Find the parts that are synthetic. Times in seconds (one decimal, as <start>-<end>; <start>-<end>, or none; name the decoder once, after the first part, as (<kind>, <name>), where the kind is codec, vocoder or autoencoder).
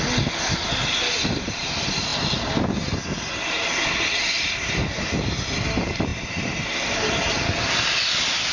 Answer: none